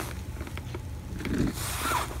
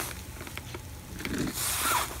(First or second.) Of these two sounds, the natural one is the first